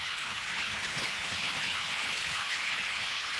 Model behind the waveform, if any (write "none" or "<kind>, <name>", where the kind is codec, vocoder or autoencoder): codec, HILCodec